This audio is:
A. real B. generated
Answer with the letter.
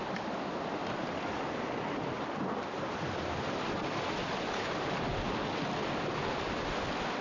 A